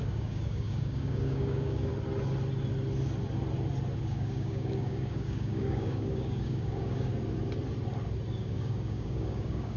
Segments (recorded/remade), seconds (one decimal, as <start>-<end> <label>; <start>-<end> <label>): 0.0-1.9 remade; 1.9-4.0 recorded; 4.0-7.1 remade; 7.1-8.3 recorded; 8.3-9.8 remade